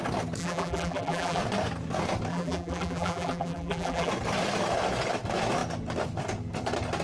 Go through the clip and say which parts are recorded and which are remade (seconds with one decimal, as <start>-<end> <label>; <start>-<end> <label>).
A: 0.0-0.4 recorded; 0.4-1.4 remade; 1.4-2.3 recorded; 2.3-4.1 remade; 4.1-7.0 recorded